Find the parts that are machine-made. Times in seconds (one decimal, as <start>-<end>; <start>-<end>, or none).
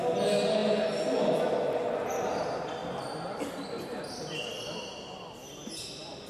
none